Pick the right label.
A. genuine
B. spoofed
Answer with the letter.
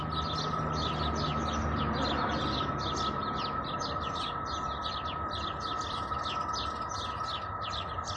A